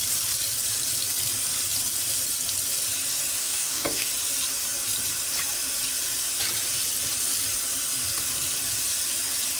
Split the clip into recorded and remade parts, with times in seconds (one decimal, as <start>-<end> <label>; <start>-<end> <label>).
0.0-3.4 recorded; 3.4-4.1 remade; 4.1-9.6 recorded